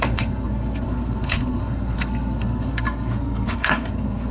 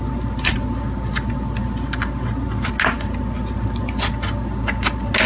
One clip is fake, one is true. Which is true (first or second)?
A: second